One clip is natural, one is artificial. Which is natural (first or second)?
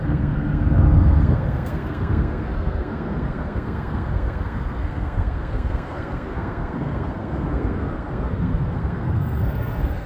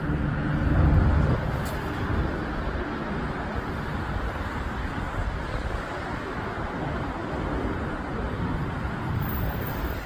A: second